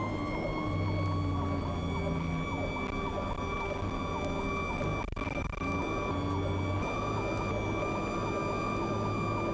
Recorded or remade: recorded